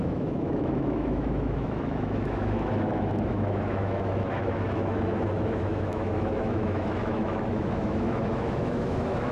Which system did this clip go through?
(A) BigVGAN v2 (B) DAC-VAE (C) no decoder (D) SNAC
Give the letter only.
B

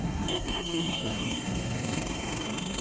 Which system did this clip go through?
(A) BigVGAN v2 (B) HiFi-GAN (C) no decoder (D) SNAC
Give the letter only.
D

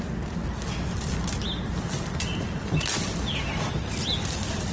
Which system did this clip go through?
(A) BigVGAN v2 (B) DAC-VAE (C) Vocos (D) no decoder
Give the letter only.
D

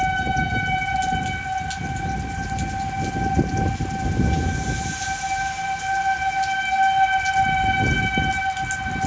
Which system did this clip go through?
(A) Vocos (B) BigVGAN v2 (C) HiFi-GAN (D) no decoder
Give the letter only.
D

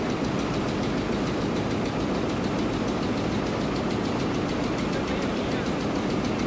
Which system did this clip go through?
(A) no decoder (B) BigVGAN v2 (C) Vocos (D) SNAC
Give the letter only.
A